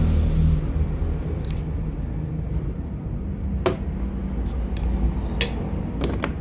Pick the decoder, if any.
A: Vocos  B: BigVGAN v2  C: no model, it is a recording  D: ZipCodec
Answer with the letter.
C